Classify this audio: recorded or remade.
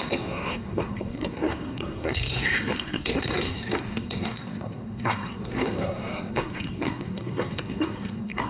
remade